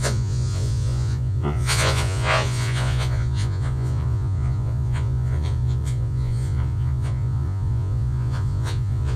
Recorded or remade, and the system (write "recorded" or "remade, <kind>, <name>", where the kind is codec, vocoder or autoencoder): remade, vocoder, Vocos